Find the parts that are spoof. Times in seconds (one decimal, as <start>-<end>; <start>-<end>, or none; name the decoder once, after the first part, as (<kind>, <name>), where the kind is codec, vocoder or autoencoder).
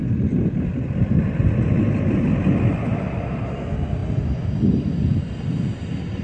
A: none